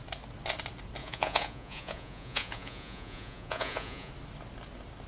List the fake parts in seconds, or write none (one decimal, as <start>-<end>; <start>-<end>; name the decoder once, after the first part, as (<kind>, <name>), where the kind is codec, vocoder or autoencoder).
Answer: 1.0-4.1 (vocoder, Vocos)